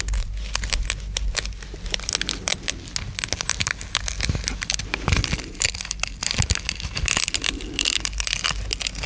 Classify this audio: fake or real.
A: real